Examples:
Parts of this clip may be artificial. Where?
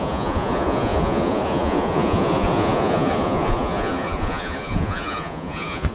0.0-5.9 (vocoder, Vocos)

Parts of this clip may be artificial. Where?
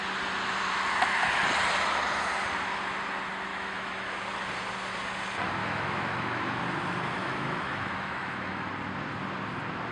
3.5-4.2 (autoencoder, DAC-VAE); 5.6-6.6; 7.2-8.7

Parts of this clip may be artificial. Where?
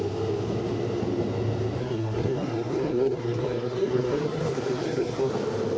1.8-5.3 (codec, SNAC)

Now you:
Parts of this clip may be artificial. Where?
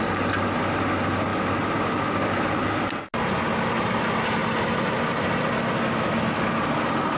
none